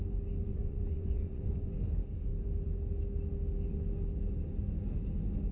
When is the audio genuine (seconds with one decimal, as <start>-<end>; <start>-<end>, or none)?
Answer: 0.0-0.5; 1.7-5.5